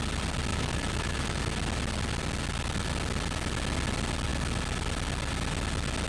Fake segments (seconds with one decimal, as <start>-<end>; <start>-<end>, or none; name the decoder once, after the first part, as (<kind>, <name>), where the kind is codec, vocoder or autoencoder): 0.5-1.4 (autoencoder, DAC-VAE)